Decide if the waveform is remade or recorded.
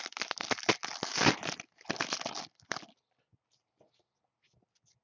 recorded